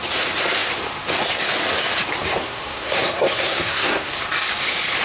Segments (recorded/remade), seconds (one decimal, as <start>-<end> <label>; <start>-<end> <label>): 0.0-2.4 recorded; 2.4-4.1 remade; 4.1-5.0 recorded

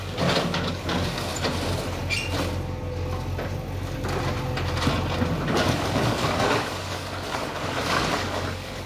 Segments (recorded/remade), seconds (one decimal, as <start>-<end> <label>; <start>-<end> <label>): 0.0-1.3 remade; 1.3-5.5 recorded; 5.5-8.9 remade

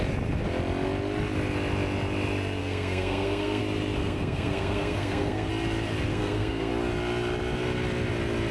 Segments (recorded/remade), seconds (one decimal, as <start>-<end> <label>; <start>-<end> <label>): 0.0-2.6 recorded; 2.6-3.6 remade; 3.6-4.0 recorded; 4.0-5.5 remade; 5.5-6.1 recorded; 6.1-6.7 remade; 6.7-8.5 recorded

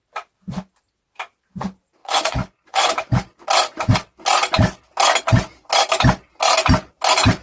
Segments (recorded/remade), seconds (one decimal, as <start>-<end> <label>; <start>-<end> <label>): 0.0-2.0 recorded; 2.0-2.9 remade; 2.9-7.4 recorded

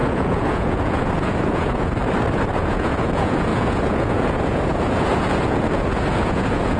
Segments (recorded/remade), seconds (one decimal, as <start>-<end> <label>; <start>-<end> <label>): 0.0-2.0 remade; 2.0-2.5 recorded; 2.5-6.8 remade

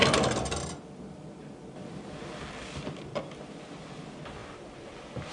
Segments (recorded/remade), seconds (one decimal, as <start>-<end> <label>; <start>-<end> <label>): 0.0-5.3 recorded

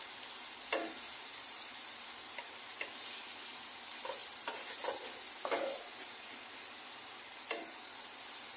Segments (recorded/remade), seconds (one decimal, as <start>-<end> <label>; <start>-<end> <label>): 0.0-8.6 recorded

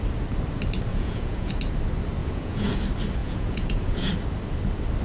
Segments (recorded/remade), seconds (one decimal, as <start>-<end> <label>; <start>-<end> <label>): 0.0-0.9 recorded; 0.9-1.5 remade; 1.5-2.2 recorded; 2.2-2.8 remade; 2.8-3.2 recorded; 3.2-4.1 remade; 4.1-5.0 recorded